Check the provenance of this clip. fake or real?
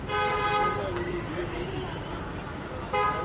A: real